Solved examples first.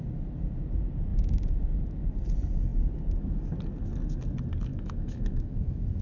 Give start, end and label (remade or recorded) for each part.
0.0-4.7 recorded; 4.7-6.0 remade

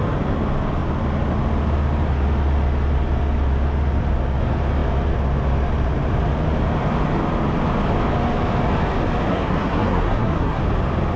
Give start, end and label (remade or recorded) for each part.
0.0-9.3 recorded; 9.3-10.6 remade; 10.6-11.2 recorded

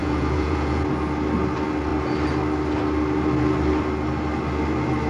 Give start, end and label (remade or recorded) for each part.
0.0-0.9 remade; 0.9-5.1 recorded